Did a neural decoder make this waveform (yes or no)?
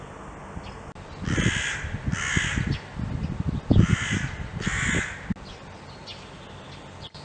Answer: no